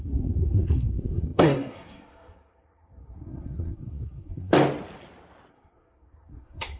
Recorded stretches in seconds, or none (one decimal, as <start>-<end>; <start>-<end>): 4.5-5.5